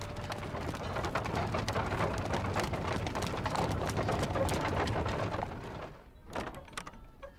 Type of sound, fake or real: real